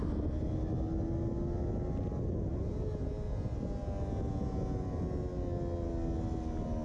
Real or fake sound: real